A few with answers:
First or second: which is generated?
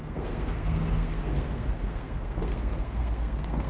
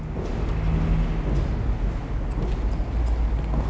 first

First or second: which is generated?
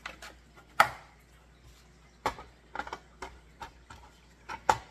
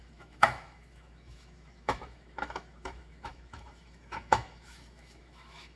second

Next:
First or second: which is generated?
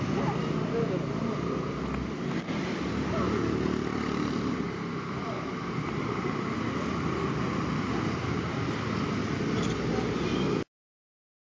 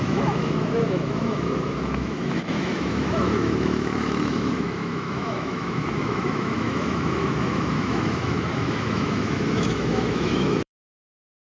second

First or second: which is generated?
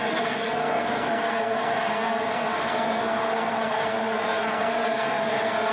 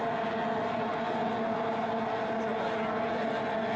first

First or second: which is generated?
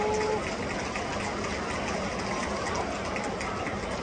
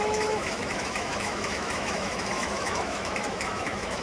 second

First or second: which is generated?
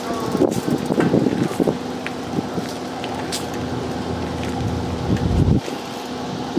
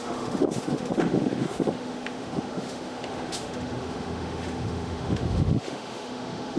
second